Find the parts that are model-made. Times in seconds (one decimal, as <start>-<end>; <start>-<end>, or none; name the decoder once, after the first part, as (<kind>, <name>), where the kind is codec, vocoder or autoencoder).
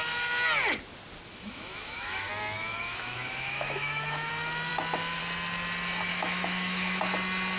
1.3-2.3 (autoencoder, DAC-VAE); 2.7-4.3; 6.1-7.0